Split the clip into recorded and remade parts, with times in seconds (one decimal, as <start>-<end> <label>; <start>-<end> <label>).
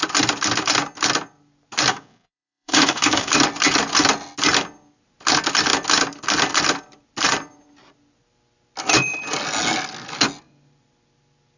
0.0-1.9 recorded; 1.9-3.3 remade; 3.3-11.6 recorded